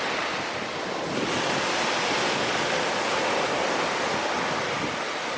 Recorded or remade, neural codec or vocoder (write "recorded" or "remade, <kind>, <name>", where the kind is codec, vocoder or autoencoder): recorded